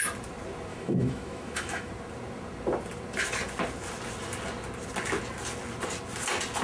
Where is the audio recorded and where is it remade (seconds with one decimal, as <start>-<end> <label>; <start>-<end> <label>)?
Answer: 0.0-0.7 recorded; 0.7-1.9 remade; 1.9-6.6 recorded